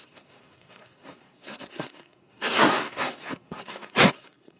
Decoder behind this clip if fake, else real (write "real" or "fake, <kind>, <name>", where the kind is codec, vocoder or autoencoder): fake, codec, SNAC